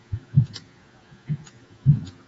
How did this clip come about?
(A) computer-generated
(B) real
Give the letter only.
A